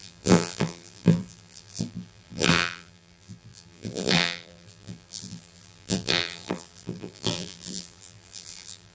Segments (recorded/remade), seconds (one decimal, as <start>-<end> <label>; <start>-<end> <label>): 0.0-8.9 remade

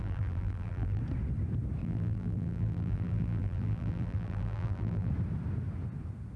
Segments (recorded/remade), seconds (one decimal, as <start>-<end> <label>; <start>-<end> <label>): 0.0-1.0 remade; 1.0-1.8 recorded; 1.8-5.1 remade; 5.1-6.4 recorded

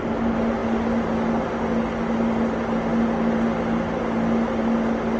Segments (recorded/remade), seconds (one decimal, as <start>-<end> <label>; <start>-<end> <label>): 0.0-5.2 recorded